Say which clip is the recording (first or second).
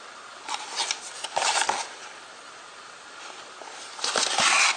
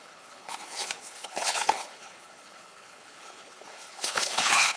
first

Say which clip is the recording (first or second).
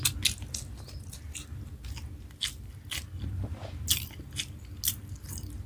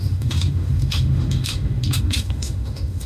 first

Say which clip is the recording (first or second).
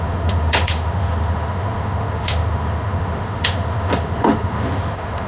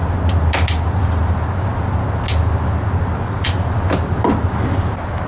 second